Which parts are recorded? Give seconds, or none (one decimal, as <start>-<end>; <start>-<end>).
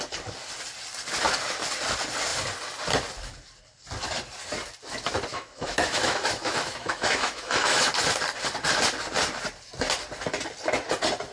0.0-5.3; 7.9-11.3